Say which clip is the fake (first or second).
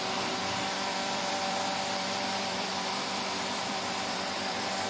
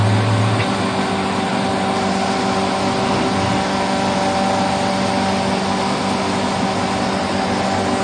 first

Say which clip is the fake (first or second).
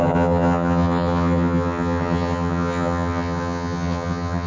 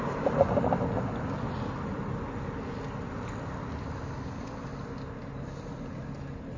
first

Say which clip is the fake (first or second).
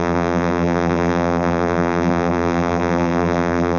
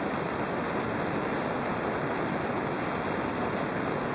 first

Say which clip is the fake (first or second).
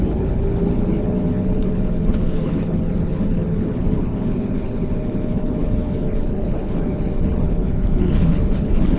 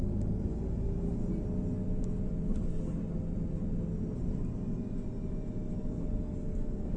first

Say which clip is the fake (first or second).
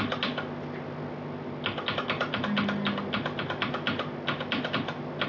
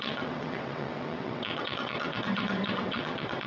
second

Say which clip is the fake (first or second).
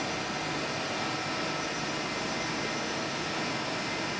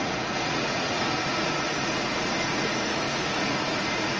second